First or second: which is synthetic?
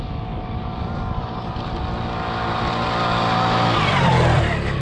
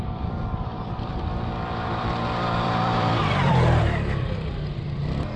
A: second